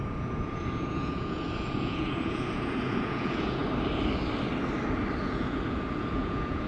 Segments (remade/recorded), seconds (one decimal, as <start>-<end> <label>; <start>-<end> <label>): 0.0-3.6 remade; 3.6-5.2 recorded; 5.2-6.7 remade